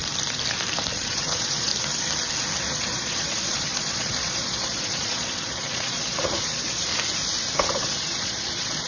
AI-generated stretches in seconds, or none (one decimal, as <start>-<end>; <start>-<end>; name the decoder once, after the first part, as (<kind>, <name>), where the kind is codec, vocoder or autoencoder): 1.0-1.7 (vocoder, Vocos); 2.6-6.9; 7.6-8.9